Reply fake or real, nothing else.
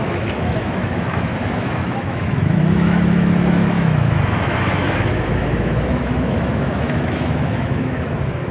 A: fake